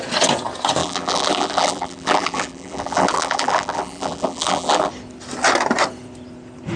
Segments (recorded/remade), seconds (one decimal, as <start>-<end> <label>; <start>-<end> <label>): 0.0-0.8 recorded; 0.8-4.9 remade; 4.9-6.8 recorded